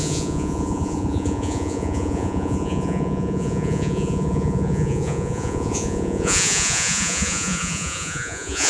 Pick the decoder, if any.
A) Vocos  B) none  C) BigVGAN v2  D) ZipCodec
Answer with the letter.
A